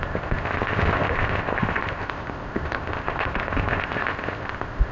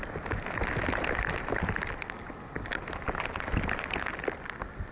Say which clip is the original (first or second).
second